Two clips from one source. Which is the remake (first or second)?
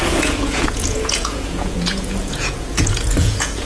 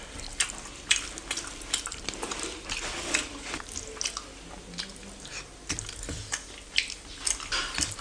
first